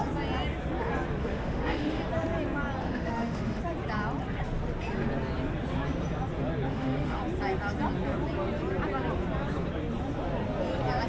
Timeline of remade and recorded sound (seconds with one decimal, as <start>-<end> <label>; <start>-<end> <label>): 0.0-1.2 recorded; 1.2-2.0 remade; 2.0-2.8 recorded; 2.8-3.6 remade; 3.6-6.7 recorded; 6.7-7.2 remade; 7.2-11.1 recorded